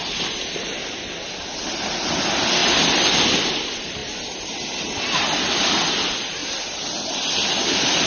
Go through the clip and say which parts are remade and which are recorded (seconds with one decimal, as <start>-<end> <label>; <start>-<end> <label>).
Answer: 0.0-8.1 recorded